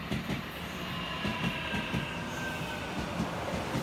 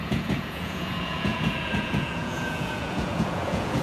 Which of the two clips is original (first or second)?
first